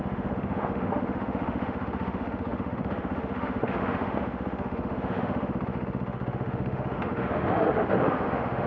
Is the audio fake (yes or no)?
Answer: yes